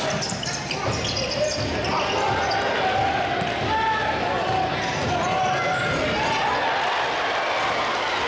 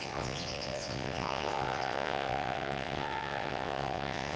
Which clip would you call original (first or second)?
first